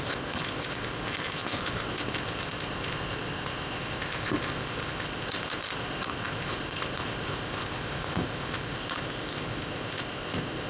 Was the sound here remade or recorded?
remade